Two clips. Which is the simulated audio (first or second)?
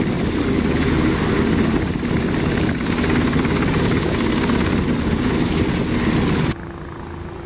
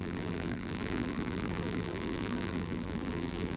second